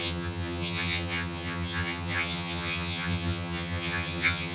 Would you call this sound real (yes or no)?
no